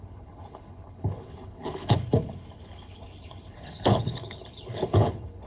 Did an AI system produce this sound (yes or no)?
yes